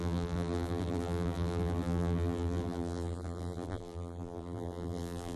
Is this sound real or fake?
fake